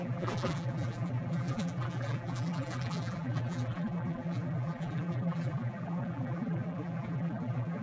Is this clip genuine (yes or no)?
no